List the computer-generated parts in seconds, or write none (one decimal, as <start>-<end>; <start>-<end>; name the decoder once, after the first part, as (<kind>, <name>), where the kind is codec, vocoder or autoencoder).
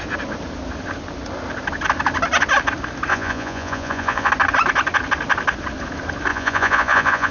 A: 3.1-4.3 (vocoder, Vocos); 6.3-7.3